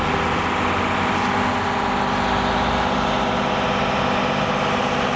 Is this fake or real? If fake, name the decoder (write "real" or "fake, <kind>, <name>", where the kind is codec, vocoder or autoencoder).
real